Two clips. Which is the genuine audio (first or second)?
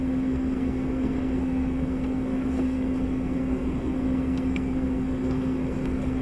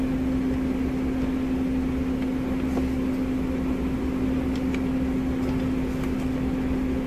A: second